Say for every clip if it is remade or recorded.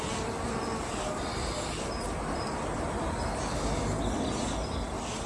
recorded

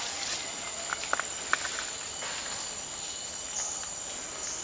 recorded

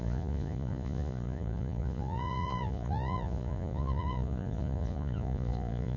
remade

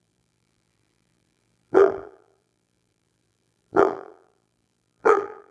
remade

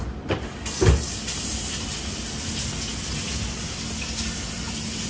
recorded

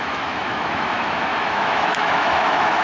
remade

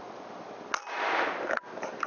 recorded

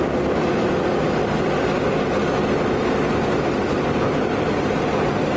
recorded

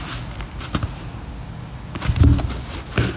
recorded